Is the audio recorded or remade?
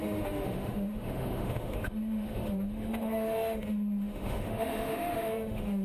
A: remade